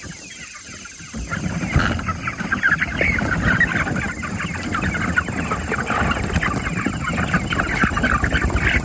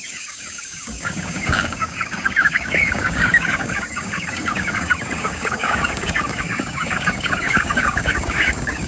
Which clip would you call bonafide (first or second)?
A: first